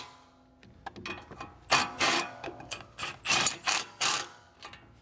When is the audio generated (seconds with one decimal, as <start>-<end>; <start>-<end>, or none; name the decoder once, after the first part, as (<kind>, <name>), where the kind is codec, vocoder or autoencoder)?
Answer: 1.8-3.2 (codec, DAC); 3.6-4.5